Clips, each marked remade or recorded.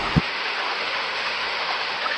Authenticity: remade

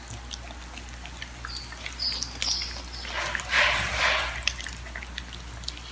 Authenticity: recorded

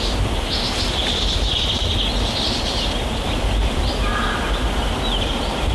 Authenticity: recorded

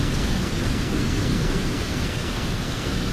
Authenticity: remade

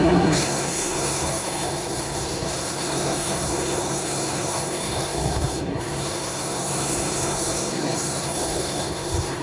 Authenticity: remade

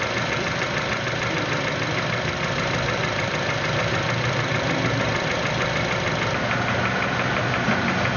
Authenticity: remade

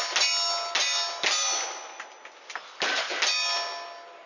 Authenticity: recorded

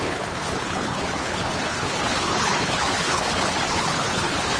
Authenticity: remade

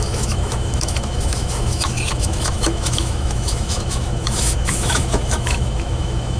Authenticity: remade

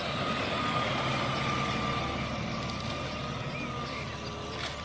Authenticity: recorded